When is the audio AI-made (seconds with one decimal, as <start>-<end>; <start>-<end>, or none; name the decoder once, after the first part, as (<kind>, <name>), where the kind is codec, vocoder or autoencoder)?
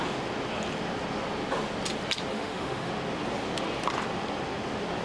2.3-2.9 (autoencoder, DAC-VAE)